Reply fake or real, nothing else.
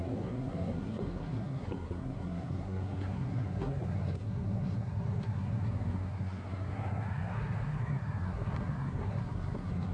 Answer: fake